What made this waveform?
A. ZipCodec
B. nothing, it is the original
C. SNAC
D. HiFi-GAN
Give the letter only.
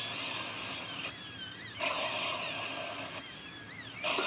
B